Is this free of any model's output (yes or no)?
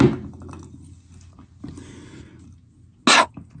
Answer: yes